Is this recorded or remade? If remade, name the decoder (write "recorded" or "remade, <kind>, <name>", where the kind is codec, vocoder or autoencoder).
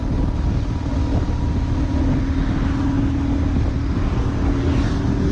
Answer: recorded